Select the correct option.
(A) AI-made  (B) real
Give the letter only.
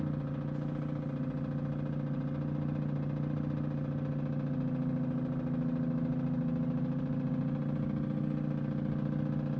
B